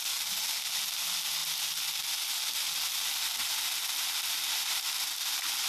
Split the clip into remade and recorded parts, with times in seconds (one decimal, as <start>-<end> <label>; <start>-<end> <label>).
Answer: 0.0-5.7 recorded